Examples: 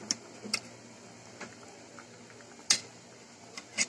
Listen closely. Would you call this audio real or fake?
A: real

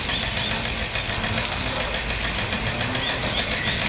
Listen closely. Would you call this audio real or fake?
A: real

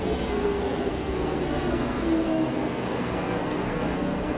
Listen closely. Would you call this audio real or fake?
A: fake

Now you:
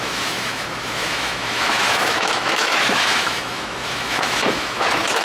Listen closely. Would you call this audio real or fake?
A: fake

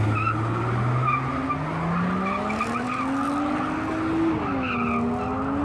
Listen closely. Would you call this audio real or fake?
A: real